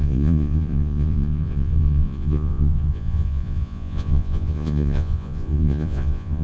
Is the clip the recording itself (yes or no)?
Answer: no